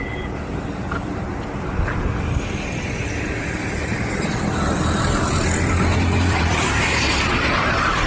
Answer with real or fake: fake